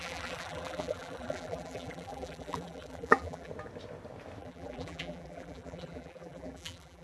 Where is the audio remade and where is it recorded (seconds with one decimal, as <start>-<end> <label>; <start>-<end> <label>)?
0.0-3.5 remade; 3.5-4.4 recorded; 4.4-7.0 remade